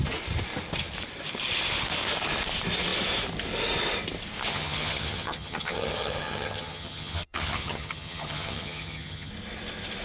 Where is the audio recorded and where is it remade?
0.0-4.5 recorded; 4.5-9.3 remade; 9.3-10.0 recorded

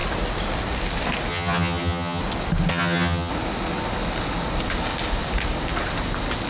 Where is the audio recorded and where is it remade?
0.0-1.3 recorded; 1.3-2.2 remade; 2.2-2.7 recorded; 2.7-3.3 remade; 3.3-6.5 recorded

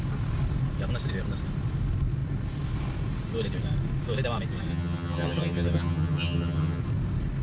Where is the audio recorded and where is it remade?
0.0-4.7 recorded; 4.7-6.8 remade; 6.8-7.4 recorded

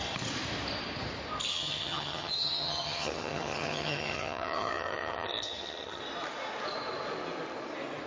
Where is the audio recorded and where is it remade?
0.0-1.5 recorded; 1.5-6.0 remade; 6.0-8.1 recorded